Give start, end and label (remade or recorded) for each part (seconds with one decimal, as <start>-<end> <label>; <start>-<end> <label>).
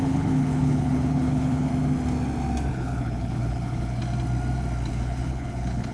0.0-1.7 remade; 1.7-2.7 recorded; 2.7-4.0 remade; 4.0-4.9 recorded; 4.9-5.9 remade